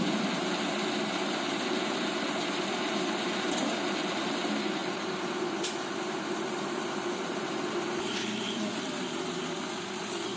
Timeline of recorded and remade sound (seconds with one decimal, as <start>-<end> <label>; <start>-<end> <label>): 0.0-10.4 recorded